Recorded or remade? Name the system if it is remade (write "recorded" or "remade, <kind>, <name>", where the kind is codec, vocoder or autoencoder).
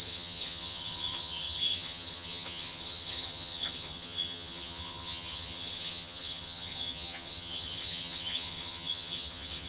remade, vocoder, HiFi-GAN